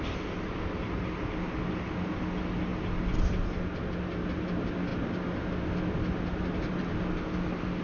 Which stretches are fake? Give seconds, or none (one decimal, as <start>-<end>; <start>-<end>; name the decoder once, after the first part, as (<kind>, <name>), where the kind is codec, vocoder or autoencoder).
none